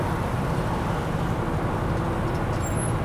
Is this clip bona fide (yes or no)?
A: yes